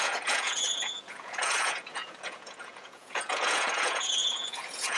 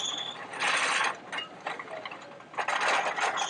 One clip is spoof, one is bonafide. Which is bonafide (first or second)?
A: second